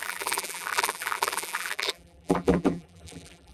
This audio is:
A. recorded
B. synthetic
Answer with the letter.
B